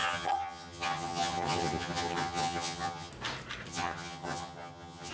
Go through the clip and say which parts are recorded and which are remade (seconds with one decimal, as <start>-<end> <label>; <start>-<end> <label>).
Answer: 0.0-3.1 remade; 3.1-3.7 recorded; 3.7-5.1 remade

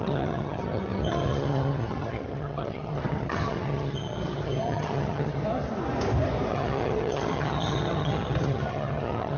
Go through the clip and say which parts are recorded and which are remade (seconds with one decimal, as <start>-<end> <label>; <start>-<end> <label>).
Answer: 0.0-5.4 remade; 5.4-6.5 recorded; 6.5-9.4 remade

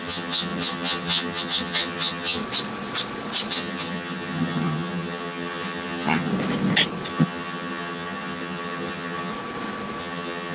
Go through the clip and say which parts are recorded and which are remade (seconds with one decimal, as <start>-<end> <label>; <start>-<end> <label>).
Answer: 0.0-2.4 remade; 2.4-3.5 recorded; 3.5-6.3 remade; 6.3-7.1 recorded; 7.1-9.3 remade; 9.3-10.0 recorded; 10.0-10.5 remade

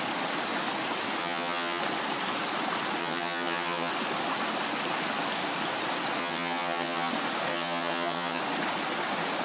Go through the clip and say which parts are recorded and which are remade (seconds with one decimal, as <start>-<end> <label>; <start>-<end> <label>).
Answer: 0.0-1.2 recorded; 1.2-1.8 remade; 1.8-3.0 recorded; 3.0-3.9 remade; 3.9-6.2 recorded; 6.2-7.1 remade; 7.1-7.5 recorded; 7.5-8.4 remade; 8.4-9.4 recorded

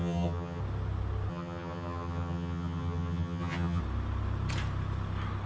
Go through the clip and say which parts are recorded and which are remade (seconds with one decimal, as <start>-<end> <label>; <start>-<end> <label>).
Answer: 0.0-0.6 remade; 0.6-1.3 recorded; 1.3-3.8 remade; 3.8-5.5 recorded